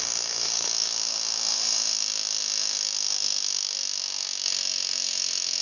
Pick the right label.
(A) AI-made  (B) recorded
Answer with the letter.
A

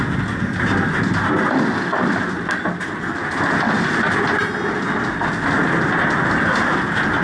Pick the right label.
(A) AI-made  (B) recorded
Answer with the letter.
B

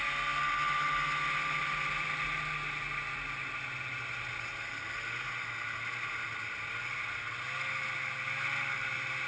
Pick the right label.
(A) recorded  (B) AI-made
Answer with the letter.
A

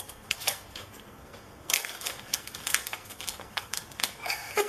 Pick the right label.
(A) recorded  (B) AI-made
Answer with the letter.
B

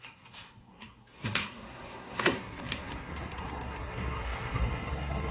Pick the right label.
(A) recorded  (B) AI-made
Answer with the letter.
B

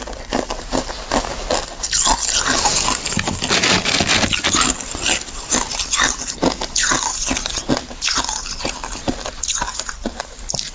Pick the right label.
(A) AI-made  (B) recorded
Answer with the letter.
B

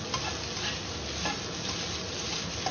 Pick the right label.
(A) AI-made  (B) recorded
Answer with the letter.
B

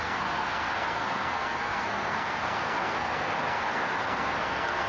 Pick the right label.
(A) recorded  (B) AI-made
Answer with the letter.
B